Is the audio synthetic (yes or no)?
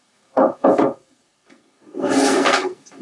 yes